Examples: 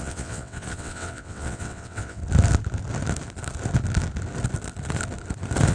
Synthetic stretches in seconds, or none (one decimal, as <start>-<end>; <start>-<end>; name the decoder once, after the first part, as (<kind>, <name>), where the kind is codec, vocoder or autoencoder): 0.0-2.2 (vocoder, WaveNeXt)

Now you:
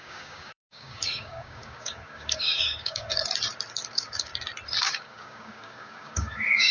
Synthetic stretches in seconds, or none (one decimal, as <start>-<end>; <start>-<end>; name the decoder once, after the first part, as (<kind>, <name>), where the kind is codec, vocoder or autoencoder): 0.0-3.1 (codec, DAC); 3.9-4.3; 4.8-6.7

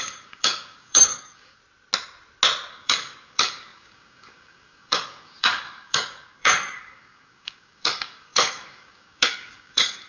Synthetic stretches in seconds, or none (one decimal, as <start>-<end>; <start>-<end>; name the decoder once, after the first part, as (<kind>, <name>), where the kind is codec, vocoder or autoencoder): 0.0-1.6 (codec, DAC); 2.7-10.1

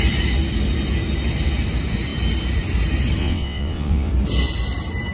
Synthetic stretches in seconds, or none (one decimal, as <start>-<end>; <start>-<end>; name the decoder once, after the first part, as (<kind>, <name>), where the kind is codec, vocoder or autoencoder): 3.2-4.1 (vocoder, WaveNeXt)

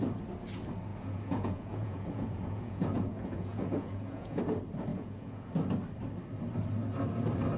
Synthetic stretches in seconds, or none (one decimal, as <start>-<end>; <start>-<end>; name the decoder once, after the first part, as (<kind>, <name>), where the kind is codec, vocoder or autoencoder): 0.9-4.4 (vocoder, Vocos); 4.9-5.5